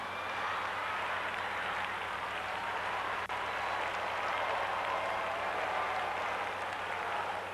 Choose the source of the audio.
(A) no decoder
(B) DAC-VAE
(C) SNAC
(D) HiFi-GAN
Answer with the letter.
A